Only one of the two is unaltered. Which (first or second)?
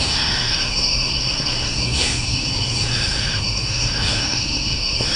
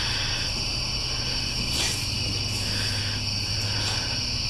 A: second